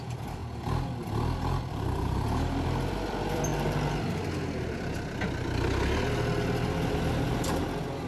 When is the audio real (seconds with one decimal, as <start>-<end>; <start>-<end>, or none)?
0.4-1.4; 3.5-8.1